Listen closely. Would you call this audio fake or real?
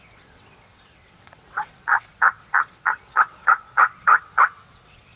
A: fake